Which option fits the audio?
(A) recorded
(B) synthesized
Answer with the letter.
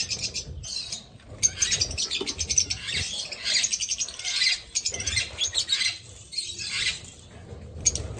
A